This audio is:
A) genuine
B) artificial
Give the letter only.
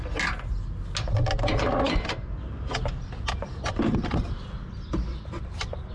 A